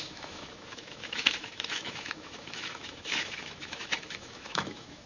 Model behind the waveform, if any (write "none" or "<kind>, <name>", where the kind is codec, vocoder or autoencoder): autoencoder, DAC-VAE